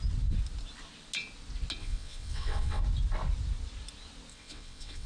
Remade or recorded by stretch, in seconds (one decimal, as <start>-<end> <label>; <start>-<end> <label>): 0.0-1.8 recorded; 1.8-2.8 remade; 2.8-4.3 recorded; 4.3-5.1 remade